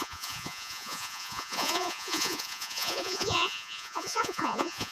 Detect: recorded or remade remade